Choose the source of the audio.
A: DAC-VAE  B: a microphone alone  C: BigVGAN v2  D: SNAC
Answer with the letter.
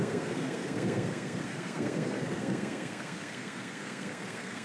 D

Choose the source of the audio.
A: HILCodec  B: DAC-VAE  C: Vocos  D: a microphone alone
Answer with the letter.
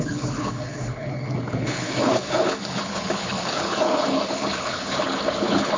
A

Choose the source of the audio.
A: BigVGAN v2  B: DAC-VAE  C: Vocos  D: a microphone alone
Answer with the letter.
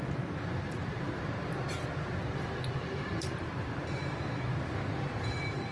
A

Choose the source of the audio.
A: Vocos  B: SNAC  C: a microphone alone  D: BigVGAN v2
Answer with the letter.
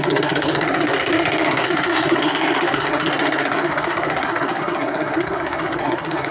B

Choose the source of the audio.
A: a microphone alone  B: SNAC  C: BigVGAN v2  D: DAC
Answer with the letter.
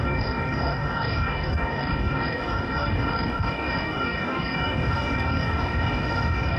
D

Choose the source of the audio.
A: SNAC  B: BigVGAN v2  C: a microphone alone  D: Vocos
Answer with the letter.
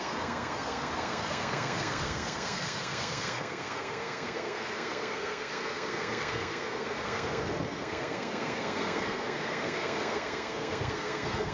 A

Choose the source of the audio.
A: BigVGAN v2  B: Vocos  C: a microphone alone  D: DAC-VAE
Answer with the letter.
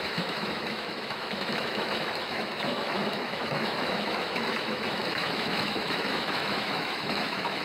D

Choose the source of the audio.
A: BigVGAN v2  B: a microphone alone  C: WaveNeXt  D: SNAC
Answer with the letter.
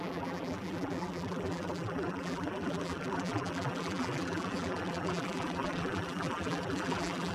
A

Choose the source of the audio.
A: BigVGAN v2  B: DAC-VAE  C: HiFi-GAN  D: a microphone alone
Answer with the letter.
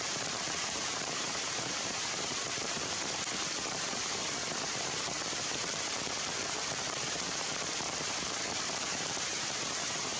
A